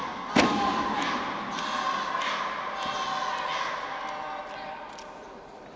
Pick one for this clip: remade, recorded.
recorded